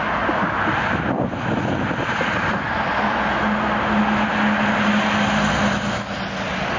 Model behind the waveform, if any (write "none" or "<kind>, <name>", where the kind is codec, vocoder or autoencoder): none